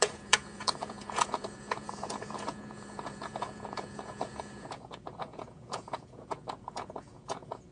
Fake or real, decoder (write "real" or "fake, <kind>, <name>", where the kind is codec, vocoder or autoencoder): fake, vocoder, Vocos